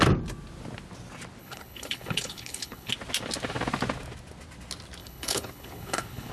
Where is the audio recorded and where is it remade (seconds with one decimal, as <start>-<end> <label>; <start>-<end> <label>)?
0.0-1.4 recorded; 1.4-2.9 remade; 2.9-5.0 recorded; 5.0-6.3 remade